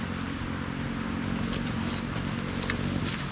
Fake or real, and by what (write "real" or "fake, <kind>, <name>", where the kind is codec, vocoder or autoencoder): real